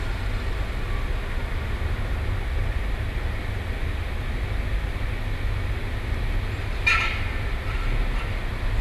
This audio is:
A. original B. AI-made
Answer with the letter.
A